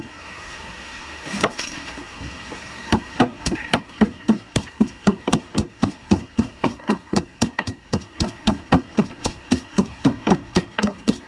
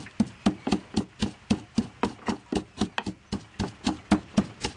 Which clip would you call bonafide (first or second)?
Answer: second